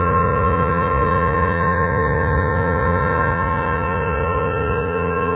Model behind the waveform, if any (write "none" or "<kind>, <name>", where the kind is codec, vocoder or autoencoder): vocoder, Vocos